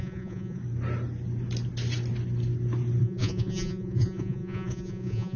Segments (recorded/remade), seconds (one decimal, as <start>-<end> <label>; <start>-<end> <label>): 0.0-0.6 remade; 0.6-3.0 recorded; 3.0-5.4 remade